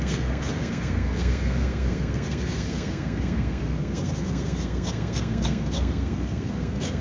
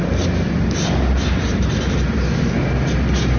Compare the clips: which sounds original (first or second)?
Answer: second